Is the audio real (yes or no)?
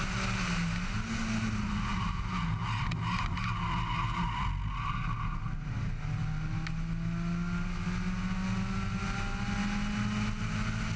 yes